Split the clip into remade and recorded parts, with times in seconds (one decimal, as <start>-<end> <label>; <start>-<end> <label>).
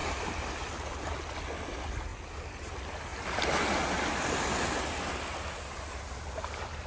0.0-1.1 remade; 1.1-6.9 recorded